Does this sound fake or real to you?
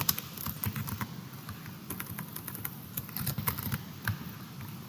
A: real